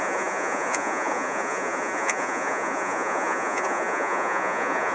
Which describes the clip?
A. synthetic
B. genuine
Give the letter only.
A